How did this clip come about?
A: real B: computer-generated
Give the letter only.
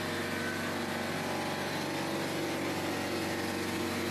A